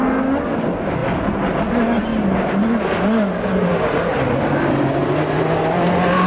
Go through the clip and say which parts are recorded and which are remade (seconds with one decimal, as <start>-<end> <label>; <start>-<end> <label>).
0.0-6.3 recorded